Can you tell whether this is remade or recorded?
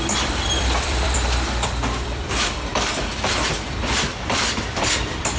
remade